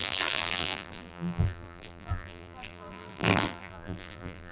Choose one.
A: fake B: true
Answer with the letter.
A